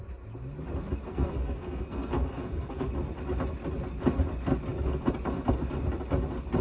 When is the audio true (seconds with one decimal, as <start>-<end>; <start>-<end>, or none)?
0.0-1.1; 2.9-6.6